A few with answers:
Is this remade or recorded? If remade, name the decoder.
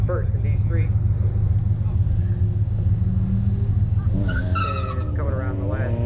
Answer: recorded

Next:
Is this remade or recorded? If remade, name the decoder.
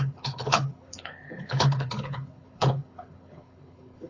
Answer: remade, codec, HILCodec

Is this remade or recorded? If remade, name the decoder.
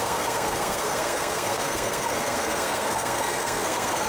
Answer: remade, codec, SNAC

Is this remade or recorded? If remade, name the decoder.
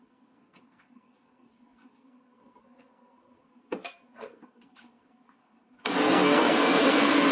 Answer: remade, codec, SNAC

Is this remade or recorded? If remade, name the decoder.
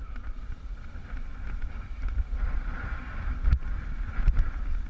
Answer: remade, vocoder, BigVGAN v2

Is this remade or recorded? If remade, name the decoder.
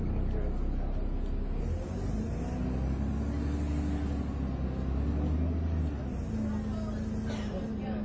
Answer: recorded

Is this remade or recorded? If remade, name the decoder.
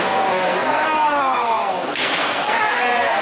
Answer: remade, codec, SNAC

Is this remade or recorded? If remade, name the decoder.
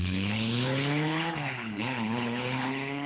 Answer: remade, codec, HILCodec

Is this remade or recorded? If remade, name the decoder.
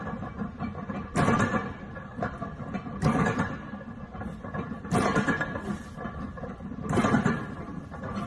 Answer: recorded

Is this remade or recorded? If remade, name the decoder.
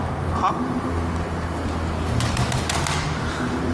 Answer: recorded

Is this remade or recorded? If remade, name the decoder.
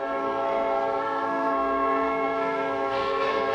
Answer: remade, codec, SNAC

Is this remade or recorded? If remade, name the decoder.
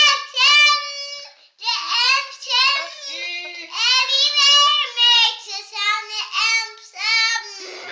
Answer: recorded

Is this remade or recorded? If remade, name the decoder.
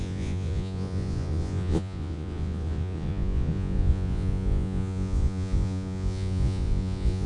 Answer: remade, vocoder, Vocos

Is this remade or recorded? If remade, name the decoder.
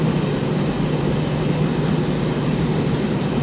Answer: remade, vocoder, BigVGAN v2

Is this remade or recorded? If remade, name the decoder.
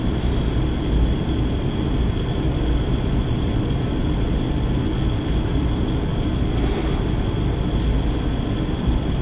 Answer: recorded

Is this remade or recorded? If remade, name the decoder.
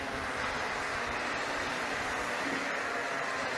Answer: recorded